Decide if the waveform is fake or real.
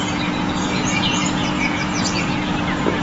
fake